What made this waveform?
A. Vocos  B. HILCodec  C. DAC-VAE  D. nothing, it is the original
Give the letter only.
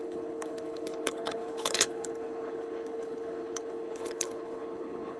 B